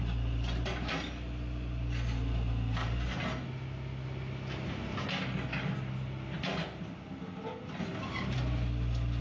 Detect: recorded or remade recorded